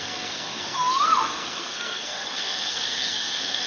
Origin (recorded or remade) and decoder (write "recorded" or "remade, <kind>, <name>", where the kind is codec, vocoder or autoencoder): remade, codec, SNAC